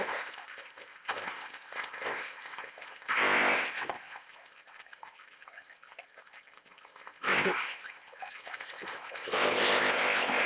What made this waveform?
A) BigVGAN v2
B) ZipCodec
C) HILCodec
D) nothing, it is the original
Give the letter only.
B